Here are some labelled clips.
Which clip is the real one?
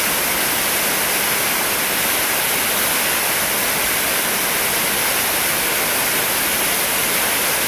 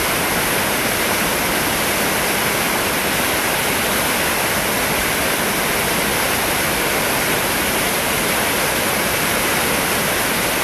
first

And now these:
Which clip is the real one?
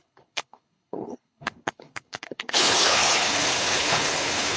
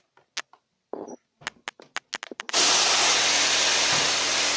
second